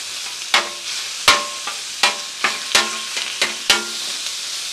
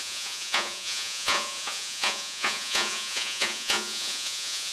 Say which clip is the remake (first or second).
second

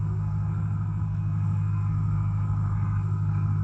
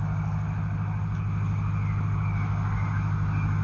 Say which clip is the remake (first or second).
first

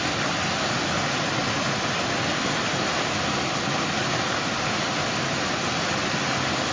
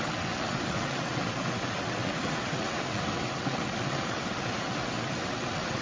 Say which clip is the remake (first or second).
second